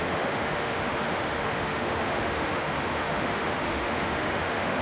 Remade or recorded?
remade